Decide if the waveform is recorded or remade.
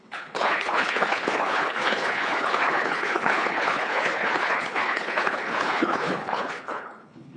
remade